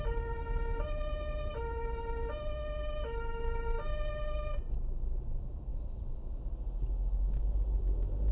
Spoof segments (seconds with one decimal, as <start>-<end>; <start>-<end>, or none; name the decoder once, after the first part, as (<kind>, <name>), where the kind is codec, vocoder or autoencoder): none